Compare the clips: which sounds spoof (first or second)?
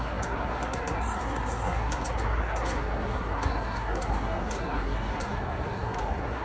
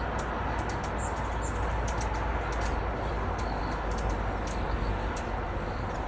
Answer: first